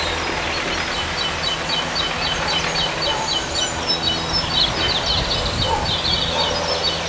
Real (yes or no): yes